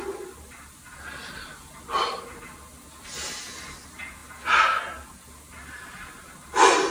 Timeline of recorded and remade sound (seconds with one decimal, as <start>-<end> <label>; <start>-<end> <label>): 0.0-6.9 recorded